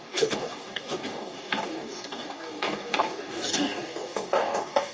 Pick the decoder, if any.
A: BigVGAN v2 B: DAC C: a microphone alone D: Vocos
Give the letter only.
B